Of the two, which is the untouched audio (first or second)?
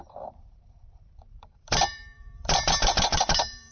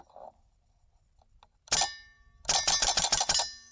second